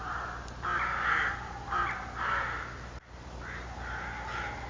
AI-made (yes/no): no